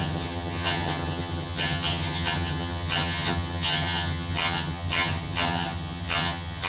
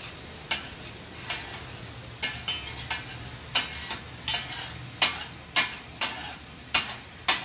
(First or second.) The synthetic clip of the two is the first